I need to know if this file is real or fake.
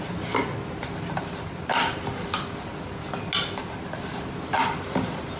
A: real